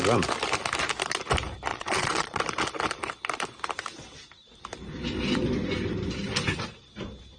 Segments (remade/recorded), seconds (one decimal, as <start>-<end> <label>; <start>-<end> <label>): 0.0-1.7 recorded; 1.7-2.4 remade; 2.4-7.4 recorded